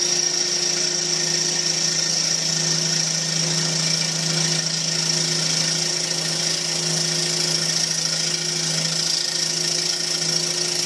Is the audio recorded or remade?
recorded